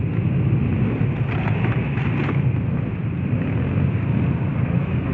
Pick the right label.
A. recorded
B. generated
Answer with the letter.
A